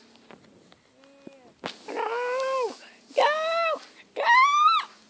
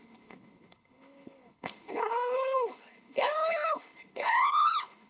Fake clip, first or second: second